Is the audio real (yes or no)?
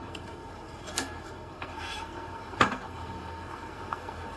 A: no